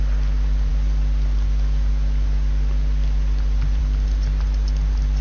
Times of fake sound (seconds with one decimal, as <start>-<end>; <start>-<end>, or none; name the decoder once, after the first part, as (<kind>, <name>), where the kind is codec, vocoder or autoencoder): none